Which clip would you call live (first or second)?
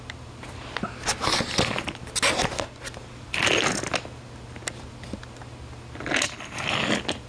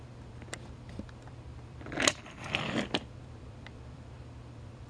first